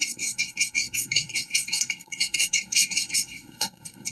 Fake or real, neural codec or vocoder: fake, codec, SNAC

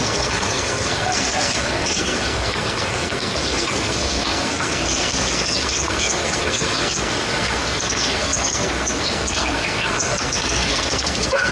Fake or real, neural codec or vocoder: fake, codec, SNAC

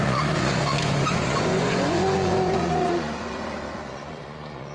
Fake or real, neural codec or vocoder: fake, vocoder, Vocos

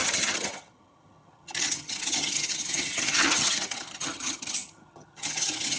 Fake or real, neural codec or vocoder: fake, vocoder, HiFi-GAN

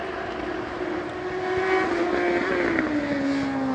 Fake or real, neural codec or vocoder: real